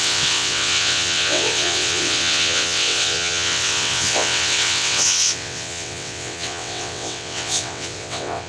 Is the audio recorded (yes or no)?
no